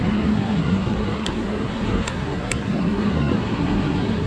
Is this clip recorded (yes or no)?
no